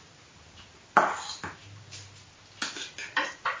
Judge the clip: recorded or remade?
recorded